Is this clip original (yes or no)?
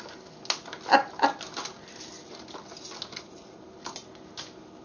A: yes